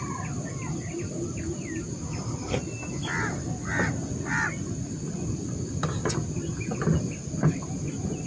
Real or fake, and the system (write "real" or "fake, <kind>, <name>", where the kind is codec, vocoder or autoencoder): real